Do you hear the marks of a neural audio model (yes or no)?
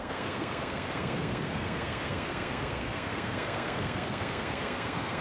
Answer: yes